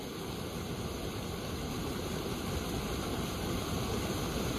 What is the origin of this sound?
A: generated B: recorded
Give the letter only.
B